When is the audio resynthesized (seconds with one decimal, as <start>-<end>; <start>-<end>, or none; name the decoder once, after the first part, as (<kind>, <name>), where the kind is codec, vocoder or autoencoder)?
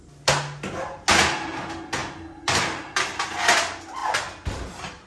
2.0-2.6 (vocoder, BigVGAN v2)